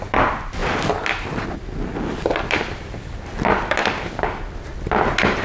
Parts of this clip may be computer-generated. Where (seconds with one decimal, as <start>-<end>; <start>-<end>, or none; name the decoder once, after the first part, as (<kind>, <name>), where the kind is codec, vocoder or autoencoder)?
0.0-0.6 (vocoder, BigVGAN v2); 2.4-3.8; 4.3-5.4